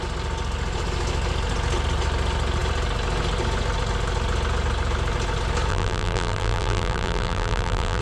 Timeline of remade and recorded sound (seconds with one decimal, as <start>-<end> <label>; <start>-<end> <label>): 0.0-5.7 recorded; 5.7-8.0 remade

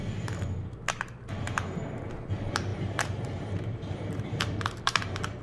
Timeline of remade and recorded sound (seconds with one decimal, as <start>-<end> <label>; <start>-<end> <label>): 0.0-2.7 recorded; 2.7-5.4 remade

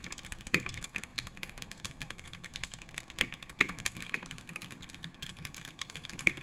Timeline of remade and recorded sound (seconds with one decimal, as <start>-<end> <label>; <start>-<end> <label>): 0.0-6.4 remade

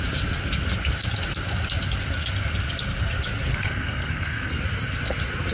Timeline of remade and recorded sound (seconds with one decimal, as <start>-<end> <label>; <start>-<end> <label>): 0.0-3.5 recorded; 3.5-4.6 remade; 4.6-5.5 recorded

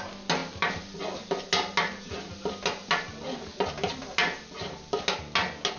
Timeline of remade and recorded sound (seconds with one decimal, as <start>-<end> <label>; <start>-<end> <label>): 0.0-5.8 recorded

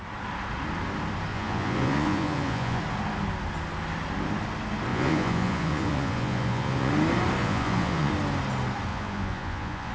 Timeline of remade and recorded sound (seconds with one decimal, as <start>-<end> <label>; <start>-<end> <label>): 0.0-1.3 recorded; 1.3-2.8 remade; 2.8-4.9 recorded; 4.9-6.9 remade; 6.9-7.4 recorded; 7.4-8.1 remade; 8.1-8.9 recorded; 8.9-9.9 remade